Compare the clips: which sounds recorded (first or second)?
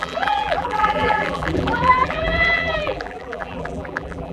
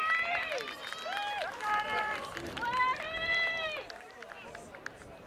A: second